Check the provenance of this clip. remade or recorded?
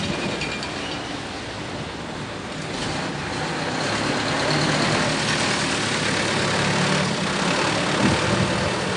recorded